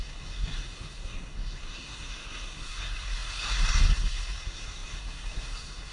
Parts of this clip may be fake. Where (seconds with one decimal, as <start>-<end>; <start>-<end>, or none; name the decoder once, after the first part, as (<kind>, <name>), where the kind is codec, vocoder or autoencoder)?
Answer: 0.0-5.9 (codec, SNAC)

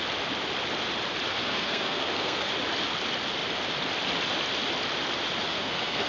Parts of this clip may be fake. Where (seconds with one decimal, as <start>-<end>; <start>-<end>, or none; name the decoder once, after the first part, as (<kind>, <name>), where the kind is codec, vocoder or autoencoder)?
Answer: 1.4-2.5 (codec, SNAC); 5.5-6.1

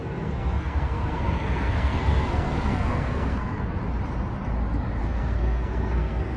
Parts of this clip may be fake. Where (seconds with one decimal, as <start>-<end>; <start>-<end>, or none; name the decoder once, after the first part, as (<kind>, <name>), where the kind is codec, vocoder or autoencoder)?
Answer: 0.0-3.8 (codec, SNAC); 5.0-6.4